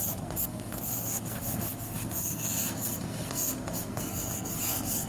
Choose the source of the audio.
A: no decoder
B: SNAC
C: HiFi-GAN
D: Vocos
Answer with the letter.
B